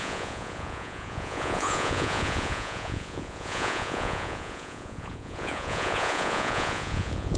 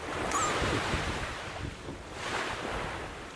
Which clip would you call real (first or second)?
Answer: second